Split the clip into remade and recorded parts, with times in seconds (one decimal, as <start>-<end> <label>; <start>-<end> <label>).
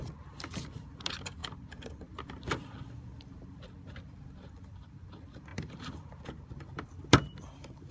0.0-7.9 remade